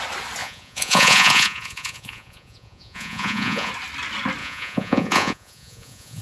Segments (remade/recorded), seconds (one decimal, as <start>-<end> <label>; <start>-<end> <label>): 0.0-0.4 recorded; 0.4-3.7 remade; 3.7-4.4 recorded; 4.4-6.2 remade